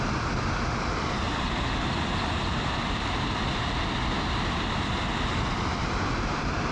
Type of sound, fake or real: real